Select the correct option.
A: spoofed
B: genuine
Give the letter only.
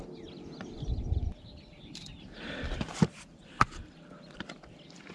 B